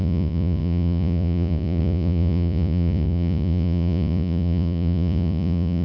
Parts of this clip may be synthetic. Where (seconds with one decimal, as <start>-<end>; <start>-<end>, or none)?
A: 0.0-5.8